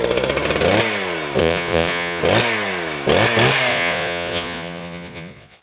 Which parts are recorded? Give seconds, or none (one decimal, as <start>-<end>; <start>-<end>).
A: 0.0-1.4; 2.2-3.7